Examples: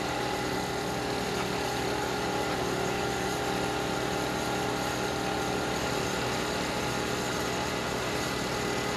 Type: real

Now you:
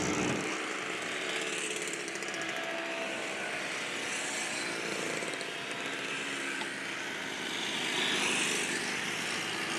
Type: real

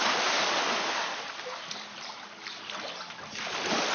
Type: fake